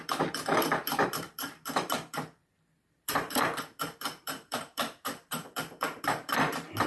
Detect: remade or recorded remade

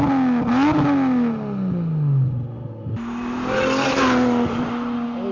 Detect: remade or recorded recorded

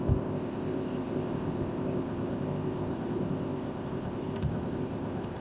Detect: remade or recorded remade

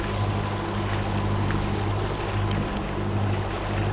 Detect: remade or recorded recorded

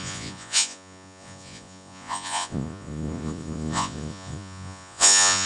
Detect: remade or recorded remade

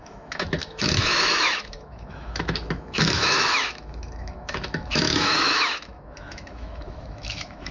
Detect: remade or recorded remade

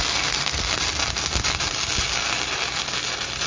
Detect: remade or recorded recorded